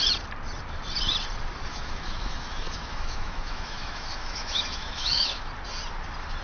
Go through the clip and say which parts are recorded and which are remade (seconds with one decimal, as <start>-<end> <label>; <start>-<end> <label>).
0.0-1.7 recorded; 1.7-5.5 remade; 5.5-6.4 recorded